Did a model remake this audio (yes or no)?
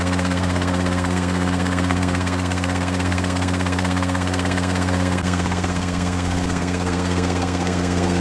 yes